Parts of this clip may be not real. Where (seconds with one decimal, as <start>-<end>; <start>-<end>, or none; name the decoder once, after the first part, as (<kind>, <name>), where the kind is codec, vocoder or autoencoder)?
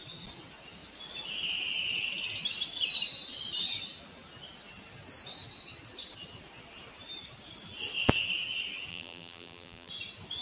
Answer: 8.9-9.9 (vocoder, BigVGAN v2)